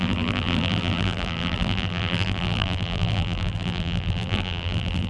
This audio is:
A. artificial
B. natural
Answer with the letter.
A